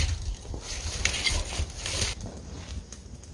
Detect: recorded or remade recorded